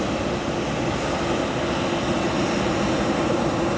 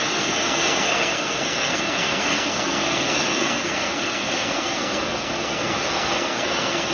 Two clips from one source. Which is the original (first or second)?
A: first